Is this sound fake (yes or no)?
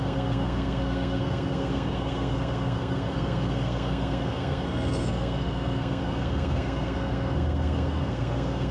yes